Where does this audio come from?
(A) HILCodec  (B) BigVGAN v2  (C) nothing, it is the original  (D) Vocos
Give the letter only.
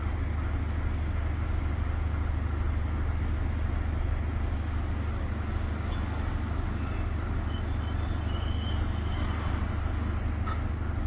C